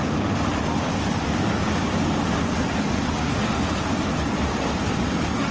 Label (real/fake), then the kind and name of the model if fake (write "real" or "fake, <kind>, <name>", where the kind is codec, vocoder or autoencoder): real